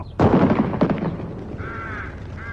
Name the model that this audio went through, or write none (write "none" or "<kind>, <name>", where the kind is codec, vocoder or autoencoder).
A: none